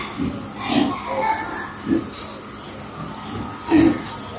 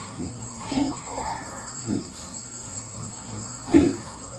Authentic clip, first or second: first